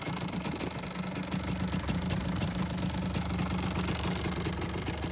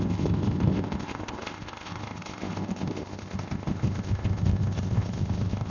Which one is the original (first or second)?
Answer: first